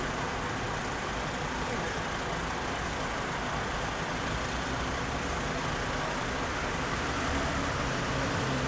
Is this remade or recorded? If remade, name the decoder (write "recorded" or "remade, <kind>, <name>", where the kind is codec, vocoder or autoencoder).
recorded